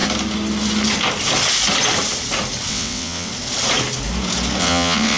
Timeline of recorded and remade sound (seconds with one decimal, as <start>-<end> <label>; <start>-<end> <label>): 0.0-2.7 recorded; 2.7-3.3 remade; 3.3-4.6 recorded; 4.6-5.2 remade